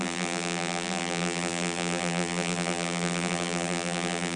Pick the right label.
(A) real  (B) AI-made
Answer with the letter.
B